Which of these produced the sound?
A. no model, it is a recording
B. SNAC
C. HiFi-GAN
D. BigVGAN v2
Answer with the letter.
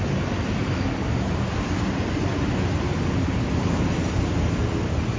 A